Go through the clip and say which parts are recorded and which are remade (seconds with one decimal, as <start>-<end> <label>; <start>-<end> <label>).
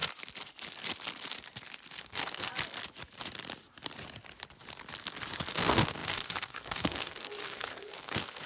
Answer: 0.0-2.0 recorded; 2.0-2.5 remade; 2.5-5.5 recorded; 5.5-8.5 remade